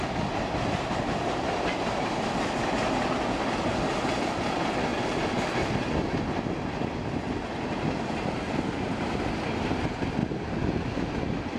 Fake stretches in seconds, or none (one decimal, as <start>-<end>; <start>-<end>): none